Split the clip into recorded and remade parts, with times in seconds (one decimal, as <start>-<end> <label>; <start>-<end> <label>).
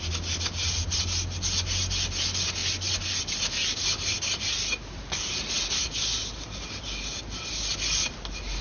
0.0-8.6 recorded